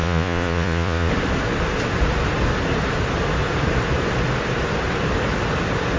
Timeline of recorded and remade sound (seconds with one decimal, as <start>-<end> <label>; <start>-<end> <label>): 0.0-1.1 remade; 1.1-6.0 recorded